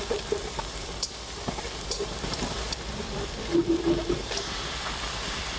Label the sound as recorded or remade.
remade